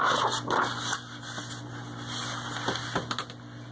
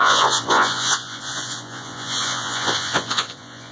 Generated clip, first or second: second